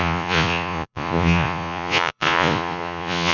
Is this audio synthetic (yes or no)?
yes